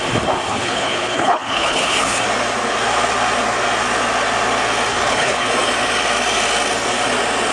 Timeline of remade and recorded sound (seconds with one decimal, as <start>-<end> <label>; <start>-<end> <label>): 0.0-0.5 recorded; 0.5-2.2 remade; 2.2-4.9 recorded; 4.9-5.5 remade; 5.5-7.5 recorded